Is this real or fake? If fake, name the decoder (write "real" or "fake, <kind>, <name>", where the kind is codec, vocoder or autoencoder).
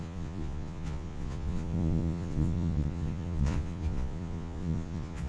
fake, vocoder, Vocos